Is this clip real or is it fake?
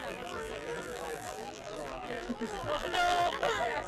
fake